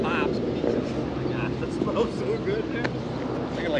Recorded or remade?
recorded